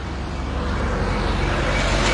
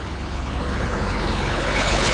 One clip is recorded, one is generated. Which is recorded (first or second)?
first